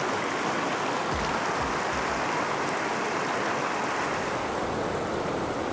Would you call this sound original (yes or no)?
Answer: yes